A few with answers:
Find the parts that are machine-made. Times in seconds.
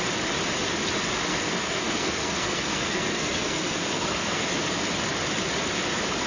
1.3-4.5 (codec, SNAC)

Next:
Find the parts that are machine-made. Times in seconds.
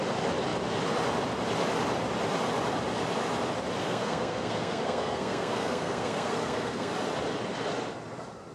3.8-6.9 (codec, SNAC)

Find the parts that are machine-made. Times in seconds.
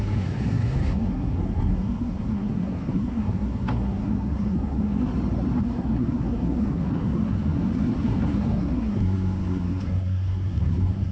0.0-5.1 (codec, SNAC); 5.6-11.1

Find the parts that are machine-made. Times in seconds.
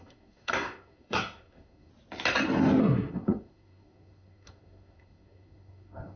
0.0-1.9 (codec, SNAC); 2.8-6.2